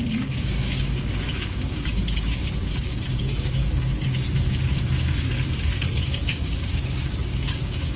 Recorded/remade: remade